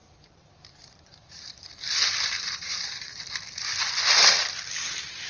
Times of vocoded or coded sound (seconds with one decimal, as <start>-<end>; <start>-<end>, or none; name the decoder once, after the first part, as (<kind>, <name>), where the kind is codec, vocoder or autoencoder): 0.0-3.2 (vocoder, BigVGAN v2)